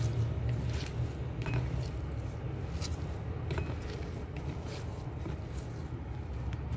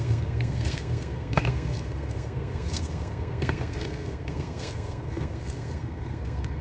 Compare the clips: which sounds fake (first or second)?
second